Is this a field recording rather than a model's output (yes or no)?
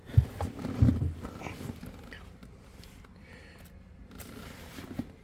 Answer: yes